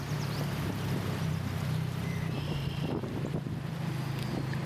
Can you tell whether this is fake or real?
fake